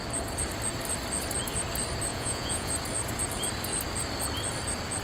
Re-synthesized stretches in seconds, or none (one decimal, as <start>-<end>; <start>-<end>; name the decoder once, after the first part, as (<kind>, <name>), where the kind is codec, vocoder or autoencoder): 2.1-2.7 (vocoder, Vocos)